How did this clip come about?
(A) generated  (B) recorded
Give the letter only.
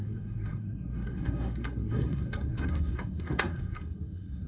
A